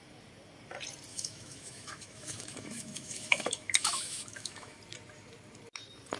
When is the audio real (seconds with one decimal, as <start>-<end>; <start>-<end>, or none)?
0.0-1.1; 4.8-6.2